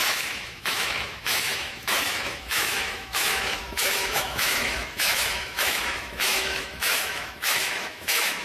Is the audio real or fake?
fake